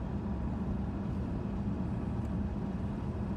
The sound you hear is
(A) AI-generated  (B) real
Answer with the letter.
B